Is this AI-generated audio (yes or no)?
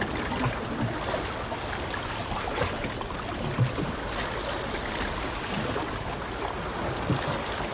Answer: no